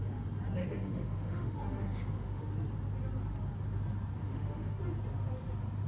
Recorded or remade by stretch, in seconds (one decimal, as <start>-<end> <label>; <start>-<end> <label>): 0.0-0.6 recorded; 0.6-2.4 remade; 2.4-4.2 recorded; 4.2-4.8 remade; 4.8-5.9 recorded